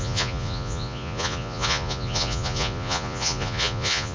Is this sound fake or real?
fake